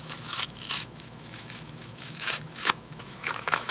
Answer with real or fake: fake